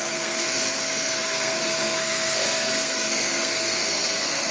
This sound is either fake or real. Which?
fake